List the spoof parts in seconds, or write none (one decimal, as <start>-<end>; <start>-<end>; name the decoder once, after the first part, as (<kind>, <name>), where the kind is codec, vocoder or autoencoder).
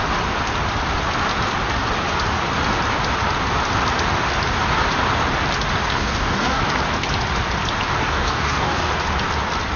5.9-6.6 (codec, DAC); 8.0-8.9